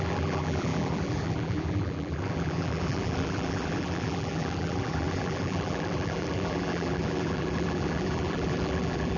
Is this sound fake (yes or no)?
yes